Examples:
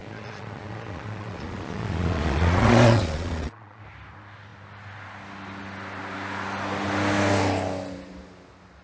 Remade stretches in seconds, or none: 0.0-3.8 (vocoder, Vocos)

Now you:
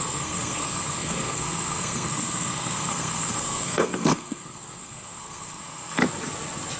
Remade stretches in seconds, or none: 0.0-6.0 (codec, SNAC)

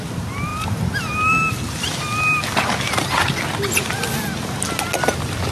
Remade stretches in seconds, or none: none

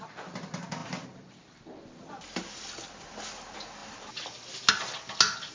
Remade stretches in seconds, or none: none